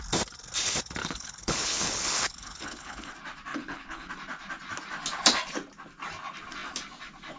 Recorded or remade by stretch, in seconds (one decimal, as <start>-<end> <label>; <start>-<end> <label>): 0.0-1.0 recorded; 1.0-3.1 remade; 3.1-3.5 recorded; 3.5-4.1 remade; 4.1-7.4 recorded